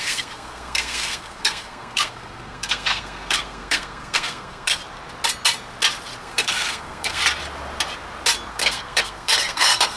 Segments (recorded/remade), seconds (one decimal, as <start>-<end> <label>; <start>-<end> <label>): 0.0-4.8 remade; 4.8-6.2 recorded; 6.2-7.2 remade; 7.2-8.5 recorded; 8.5-10.0 remade